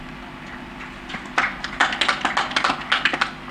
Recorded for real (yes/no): yes